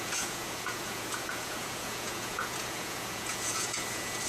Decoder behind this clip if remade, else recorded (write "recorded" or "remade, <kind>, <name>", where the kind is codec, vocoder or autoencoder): remade, vocoder, Vocos